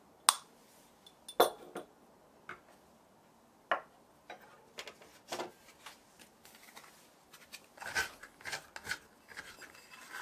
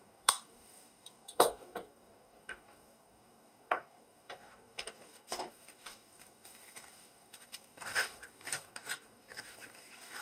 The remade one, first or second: second